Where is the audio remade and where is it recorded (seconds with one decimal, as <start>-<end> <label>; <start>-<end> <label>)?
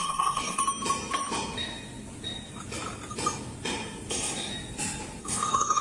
0.0-0.6 remade; 0.6-4.1 recorded; 4.1-4.5 remade; 4.5-5.2 recorded; 5.2-5.8 remade